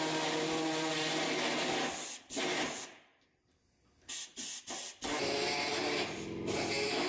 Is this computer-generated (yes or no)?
no